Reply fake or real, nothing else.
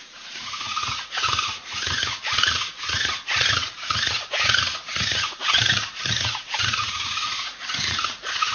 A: fake